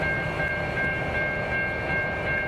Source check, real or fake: real